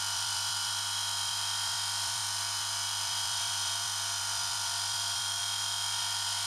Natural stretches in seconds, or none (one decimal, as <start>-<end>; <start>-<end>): 5.4-6.0